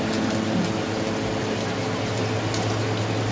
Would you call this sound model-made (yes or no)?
no